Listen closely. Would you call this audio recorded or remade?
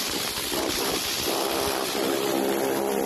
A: recorded